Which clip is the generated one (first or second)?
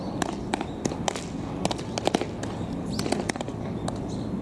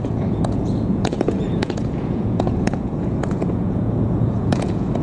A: second